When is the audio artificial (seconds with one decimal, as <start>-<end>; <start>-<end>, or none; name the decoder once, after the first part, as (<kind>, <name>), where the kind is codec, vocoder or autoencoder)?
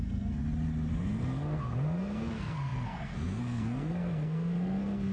0.0-0.4 (codec, SNAC); 0.9-5.1